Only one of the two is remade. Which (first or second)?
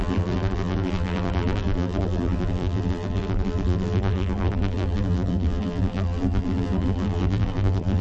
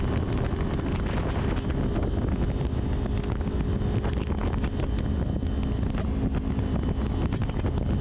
first